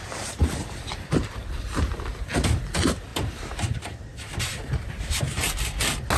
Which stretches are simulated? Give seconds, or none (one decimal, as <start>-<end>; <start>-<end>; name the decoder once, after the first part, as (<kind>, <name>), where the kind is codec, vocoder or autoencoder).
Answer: 3.1-5.5 (vocoder, BigVGAN v2)